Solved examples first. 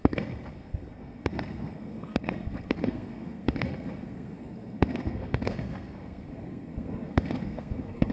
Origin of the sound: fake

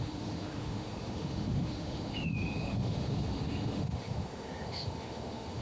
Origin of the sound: fake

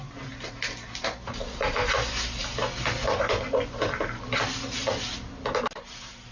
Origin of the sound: real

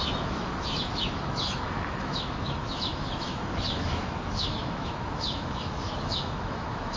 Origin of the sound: fake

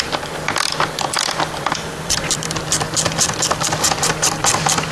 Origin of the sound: fake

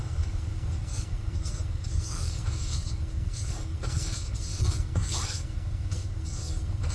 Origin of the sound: fake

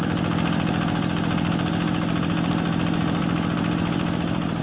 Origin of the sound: real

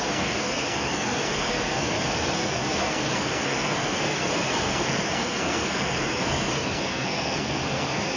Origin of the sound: fake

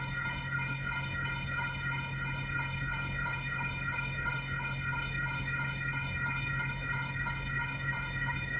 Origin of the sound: fake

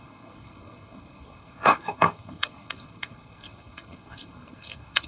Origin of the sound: fake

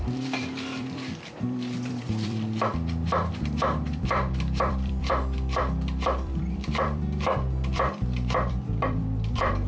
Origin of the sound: fake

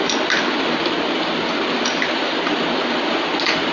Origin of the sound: real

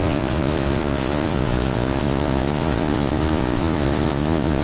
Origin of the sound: fake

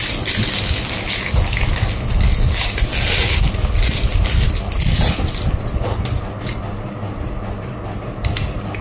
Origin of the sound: real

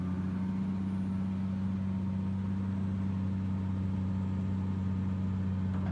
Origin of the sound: real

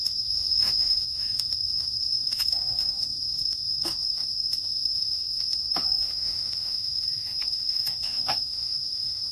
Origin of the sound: fake